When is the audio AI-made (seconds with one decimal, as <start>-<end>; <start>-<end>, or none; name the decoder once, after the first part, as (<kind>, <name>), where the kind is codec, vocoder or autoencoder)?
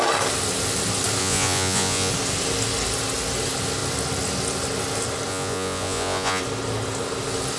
1.2-2.1 (vocoder, Vocos); 5.3-6.4